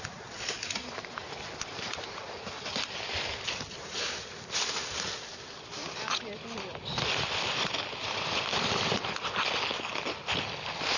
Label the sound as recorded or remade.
recorded